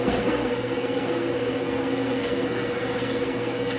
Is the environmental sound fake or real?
fake